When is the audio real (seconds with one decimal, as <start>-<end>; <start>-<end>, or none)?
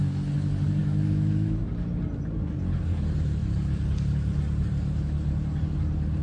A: 0.0-0.8; 1.7-6.2